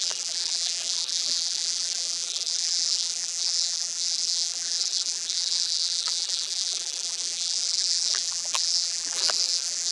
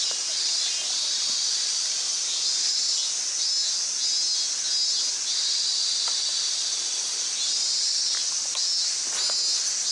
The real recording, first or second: second